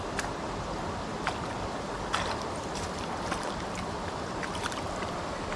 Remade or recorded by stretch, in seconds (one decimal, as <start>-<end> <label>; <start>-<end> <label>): 0.0-5.6 recorded